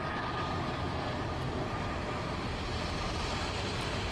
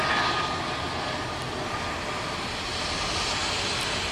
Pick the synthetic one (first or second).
first